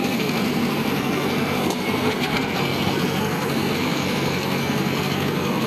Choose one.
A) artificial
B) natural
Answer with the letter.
A